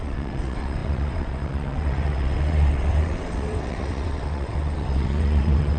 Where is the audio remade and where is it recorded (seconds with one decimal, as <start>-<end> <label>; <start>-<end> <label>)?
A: 0.0-5.8 remade